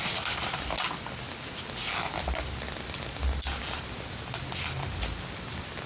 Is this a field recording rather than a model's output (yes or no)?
yes